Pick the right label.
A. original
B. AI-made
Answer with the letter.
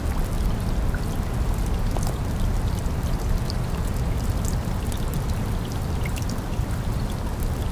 A